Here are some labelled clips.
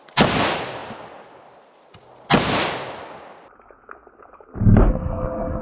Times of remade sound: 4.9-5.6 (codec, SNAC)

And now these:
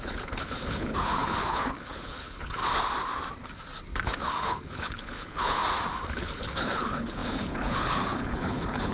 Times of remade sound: 0.0-2.6 (codec, HILCodec); 4.2-5.6; 6.1-8.9

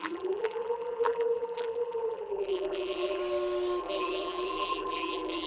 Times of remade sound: 0.0-3.2 (vocoder, BigVGAN v2); 3.8-5.5

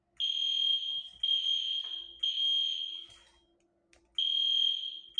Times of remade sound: none